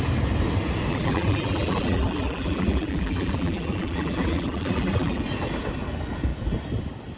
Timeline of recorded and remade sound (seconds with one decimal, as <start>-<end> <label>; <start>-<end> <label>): 0.0-0.9 recorded; 0.9-5.2 remade; 5.2-7.2 recorded